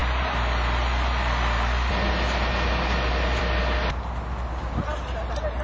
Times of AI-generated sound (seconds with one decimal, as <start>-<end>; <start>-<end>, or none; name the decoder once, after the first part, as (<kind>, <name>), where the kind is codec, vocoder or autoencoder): none